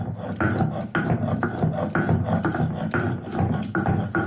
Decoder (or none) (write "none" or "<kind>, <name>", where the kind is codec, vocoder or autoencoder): none